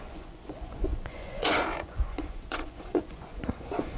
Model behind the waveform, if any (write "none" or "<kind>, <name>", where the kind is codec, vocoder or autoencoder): vocoder, Vocos